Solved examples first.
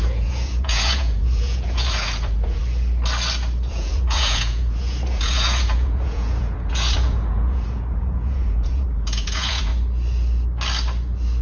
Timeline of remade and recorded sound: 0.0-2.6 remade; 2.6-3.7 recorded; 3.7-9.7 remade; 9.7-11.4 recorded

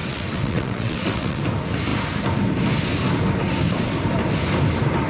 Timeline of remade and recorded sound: 0.0-1.4 remade; 1.4-5.1 recorded